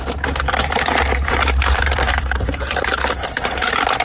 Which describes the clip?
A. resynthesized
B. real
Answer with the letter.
A